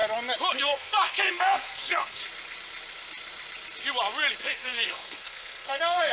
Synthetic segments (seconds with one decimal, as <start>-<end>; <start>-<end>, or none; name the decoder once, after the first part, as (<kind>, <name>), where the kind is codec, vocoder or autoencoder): 0.6-2.2 (codec, SNAC); 4.4-6.1